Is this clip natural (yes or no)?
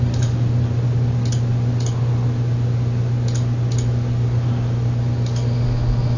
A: yes